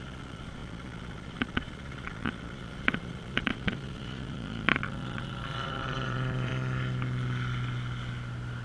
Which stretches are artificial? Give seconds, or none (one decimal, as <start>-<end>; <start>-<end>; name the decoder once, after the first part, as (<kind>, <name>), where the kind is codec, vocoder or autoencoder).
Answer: 0.0-6.5 (vocoder, Vocos)